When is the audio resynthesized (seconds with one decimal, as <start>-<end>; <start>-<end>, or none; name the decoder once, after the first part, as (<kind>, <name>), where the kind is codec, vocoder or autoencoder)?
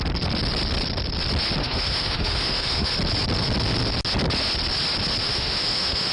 1.6-2.9 (autoencoder, DAC-VAE); 5.2-6.1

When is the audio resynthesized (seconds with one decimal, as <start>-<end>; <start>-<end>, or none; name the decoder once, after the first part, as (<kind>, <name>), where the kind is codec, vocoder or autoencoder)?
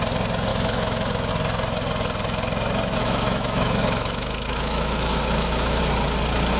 0.5-1.3 (autoencoder, DAC-VAE); 3.0-5.8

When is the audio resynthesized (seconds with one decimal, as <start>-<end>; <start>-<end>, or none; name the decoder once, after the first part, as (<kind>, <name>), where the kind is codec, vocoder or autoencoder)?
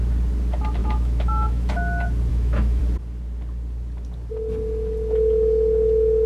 0.8-1.7 (autoencoder, DAC-VAE); 2.3-2.8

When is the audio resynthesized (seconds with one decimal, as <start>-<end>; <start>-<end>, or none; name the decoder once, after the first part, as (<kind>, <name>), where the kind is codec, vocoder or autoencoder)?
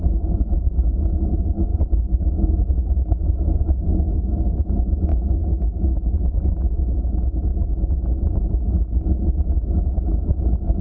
5.1-6.4 (autoencoder, DAC-VAE)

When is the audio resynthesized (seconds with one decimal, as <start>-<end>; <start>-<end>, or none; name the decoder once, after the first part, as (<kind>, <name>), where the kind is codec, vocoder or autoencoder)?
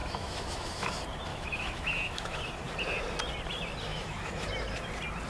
0.0-0.9 (autoencoder, DAC-VAE); 1.3-2.4; 3.9-4.5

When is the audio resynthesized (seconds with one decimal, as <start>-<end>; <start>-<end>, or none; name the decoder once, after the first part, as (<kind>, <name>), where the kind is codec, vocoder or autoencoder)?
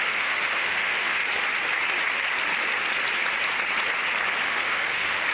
0.0-1.2 (autoencoder, DAC-VAE); 4.4-5.3